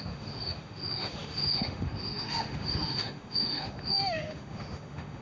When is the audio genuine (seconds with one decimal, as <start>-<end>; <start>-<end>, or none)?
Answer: none